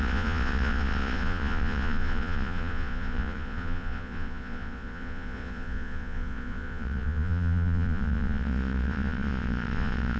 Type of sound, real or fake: fake